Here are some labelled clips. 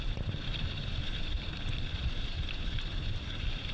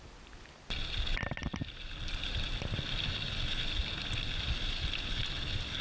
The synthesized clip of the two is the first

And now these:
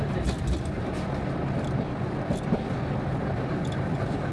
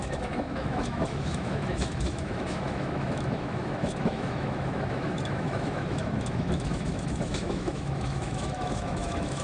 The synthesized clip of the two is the second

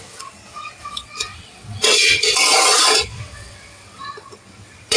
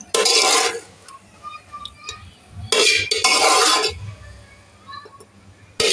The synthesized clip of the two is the first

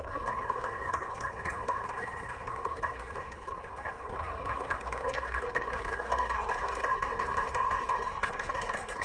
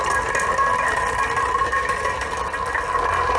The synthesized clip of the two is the first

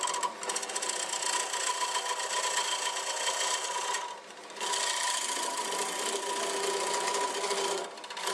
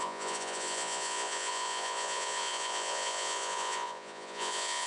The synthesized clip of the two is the second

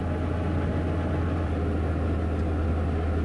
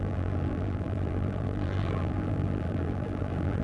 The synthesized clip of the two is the second